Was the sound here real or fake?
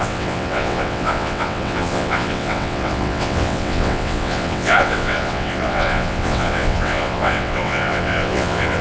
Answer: fake